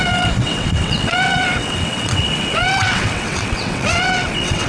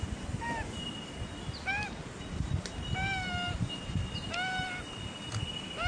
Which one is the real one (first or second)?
second